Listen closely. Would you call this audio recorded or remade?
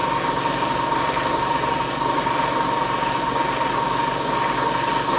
recorded